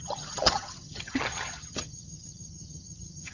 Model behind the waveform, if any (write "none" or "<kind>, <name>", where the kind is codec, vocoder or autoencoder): vocoder, HiFi-GAN